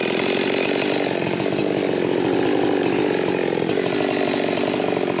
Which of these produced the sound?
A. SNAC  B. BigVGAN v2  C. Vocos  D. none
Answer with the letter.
D